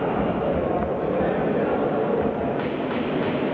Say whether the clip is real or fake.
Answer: real